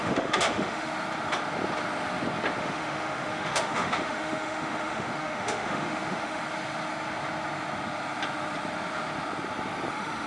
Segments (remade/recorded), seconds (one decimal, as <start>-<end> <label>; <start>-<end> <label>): 0.0-0.9 remade; 0.9-2.6 recorded; 2.6-6.4 remade; 6.4-9.9 recorded; 9.9-10.3 remade